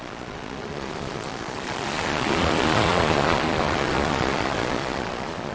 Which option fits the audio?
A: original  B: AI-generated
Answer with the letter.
B